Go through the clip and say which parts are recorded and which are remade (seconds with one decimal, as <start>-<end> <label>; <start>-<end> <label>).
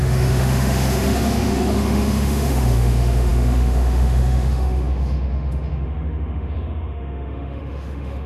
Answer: 0.0-8.3 remade